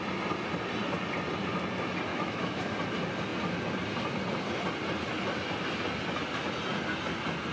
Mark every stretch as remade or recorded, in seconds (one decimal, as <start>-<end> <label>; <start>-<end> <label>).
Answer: 0.0-2.1 recorded; 2.1-2.7 remade; 2.7-7.5 recorded